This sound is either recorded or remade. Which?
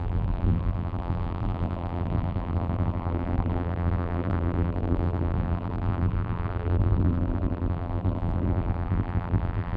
remade